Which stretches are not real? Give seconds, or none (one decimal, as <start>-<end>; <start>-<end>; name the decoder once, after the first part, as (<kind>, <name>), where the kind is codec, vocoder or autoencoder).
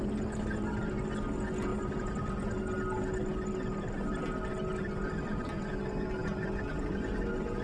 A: 1.7-2.5 (vocoder, BigVGAN v2)